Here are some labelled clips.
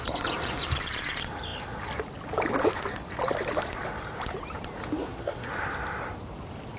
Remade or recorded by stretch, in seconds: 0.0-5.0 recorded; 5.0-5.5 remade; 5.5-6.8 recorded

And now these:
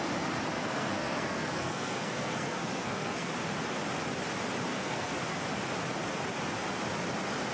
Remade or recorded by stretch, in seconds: 0.0-0.5 recorded; 0.5-3.3 remade; 3.3-4.7 recorded; 4.7-5.2 remade; 5.2-7.5 recorded

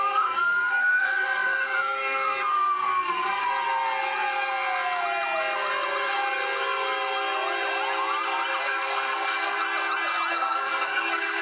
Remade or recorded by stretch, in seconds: 0.0-3.4 remade; 3.4-8.6 recorded; 8.6-9.6 remade; 9.6-10.3 recorded; 10.3-11.4 remade

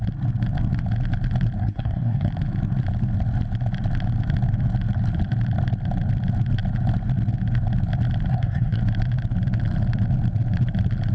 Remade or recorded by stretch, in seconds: 0.0-1.6 recorded; 1.6-2.3 remade; 2.3-8.3 recorded; 8.3-8.8 remade; 8.8-11.1 recorded

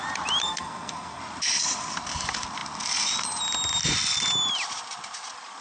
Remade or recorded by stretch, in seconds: 0.0-0.4 recorded; 0.4-1.2 remade; 1.2-5.6 recorded

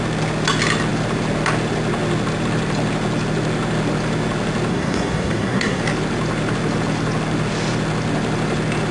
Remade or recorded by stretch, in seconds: 0.0-4.7 recorded; 4.7-5.8 remade; 5.8-8.9 recorded

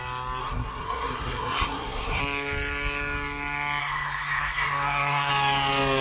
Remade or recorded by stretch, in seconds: 0.0-0.4 recorded; 0.4-2.2 remade; 2.2-3.8 recorded; 3.8-5.3 remade; 5.3-6.0 recorded

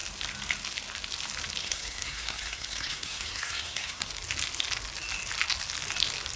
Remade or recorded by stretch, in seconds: 0.0-1.6 recorded; 1.6-4.1 remade; 4.1-6.4 recorded